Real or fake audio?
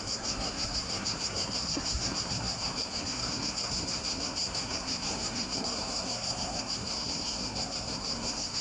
fake